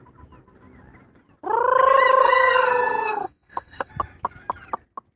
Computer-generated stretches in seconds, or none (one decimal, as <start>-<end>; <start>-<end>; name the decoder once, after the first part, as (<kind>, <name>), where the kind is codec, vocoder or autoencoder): 2.2-3.9 (codec, SNAC)